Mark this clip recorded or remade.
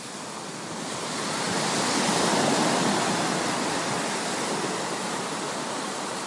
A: recorded